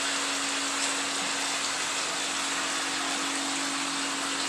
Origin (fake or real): real